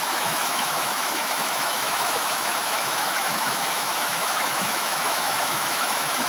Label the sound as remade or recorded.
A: remade